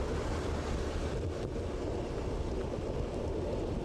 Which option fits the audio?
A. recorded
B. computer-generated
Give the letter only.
A